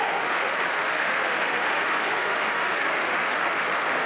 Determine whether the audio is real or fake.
fake